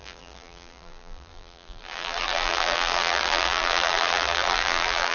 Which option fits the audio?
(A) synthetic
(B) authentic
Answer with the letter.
A